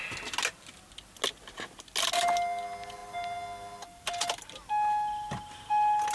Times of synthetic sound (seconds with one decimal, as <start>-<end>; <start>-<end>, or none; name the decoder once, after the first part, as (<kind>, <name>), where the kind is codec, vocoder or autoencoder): none